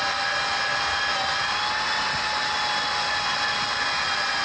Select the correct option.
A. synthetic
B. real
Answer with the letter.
B